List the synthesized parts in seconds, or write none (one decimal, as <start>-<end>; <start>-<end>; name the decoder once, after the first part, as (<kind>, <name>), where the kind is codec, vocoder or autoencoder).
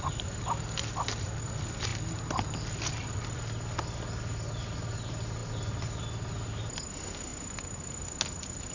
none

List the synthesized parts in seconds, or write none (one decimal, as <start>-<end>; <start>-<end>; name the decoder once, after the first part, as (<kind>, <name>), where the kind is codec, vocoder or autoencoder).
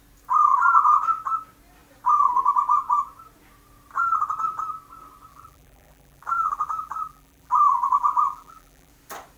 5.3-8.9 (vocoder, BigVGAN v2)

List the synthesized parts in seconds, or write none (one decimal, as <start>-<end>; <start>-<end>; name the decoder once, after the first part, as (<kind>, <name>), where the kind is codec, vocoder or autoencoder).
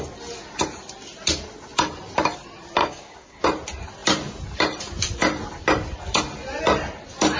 2.8-3.4 (codec, DAC)